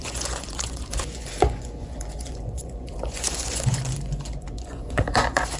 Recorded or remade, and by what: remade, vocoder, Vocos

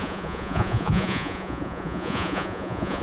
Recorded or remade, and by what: remade, vocoder, Vocos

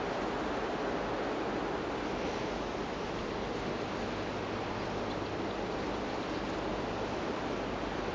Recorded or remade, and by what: recorded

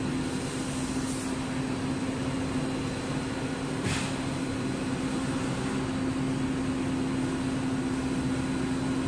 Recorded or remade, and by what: recorded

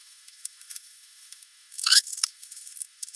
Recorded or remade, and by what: remade, autoencoder, DAC-VAE